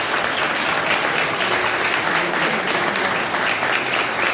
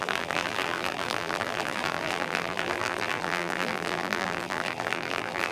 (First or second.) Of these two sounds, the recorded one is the first